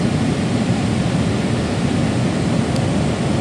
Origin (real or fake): real